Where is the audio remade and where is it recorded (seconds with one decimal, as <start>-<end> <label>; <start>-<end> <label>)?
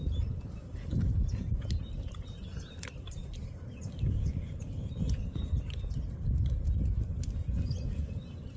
0.0-8.6 recorded